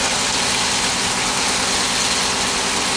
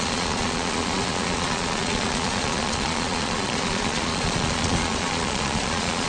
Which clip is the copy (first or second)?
second